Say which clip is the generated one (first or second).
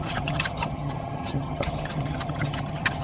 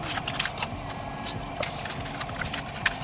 first